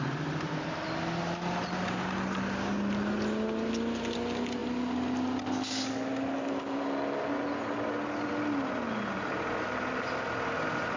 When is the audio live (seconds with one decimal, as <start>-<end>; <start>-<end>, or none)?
0.0-11.0